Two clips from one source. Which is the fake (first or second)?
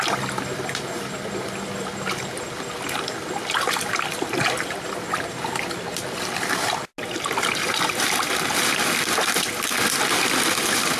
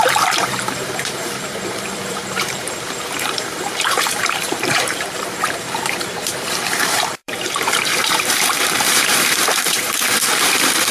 second